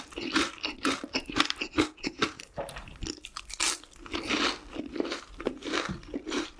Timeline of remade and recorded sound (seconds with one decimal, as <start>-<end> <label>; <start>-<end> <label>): 0.0-2.9 remade; 2.9-4.7 recorded; 4.7-6.6 remade